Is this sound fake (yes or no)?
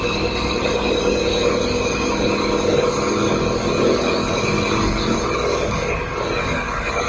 yes